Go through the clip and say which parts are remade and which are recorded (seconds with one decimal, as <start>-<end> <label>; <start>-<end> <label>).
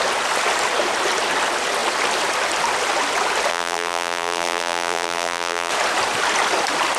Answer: 0.0-3.5 recorded; 3.5-5.7 remade; 5.7-7.0 recorded